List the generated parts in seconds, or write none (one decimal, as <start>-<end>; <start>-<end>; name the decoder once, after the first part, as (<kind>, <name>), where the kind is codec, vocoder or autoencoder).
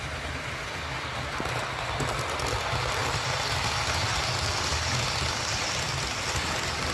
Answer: none